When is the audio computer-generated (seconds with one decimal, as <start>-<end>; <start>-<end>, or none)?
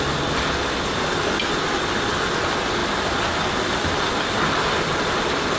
none